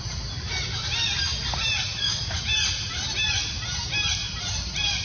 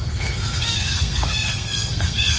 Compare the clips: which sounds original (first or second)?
first